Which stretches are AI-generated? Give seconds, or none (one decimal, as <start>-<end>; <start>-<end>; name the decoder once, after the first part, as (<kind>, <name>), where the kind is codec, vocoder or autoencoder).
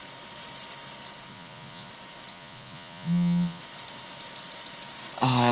1.3-1.9 (vocoder, Vocos); 2.3-3.6